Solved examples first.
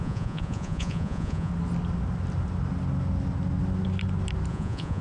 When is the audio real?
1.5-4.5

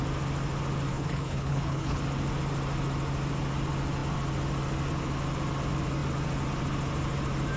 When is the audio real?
0.0-0.9; 2.0-7.6